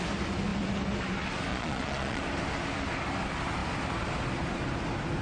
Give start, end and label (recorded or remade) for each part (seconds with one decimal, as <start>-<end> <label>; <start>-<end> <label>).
0.0-1.5 recorded; 1.5-2.2 remade; 2.2-5.2 recorded